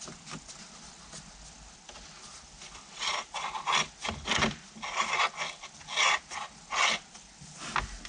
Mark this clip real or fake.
real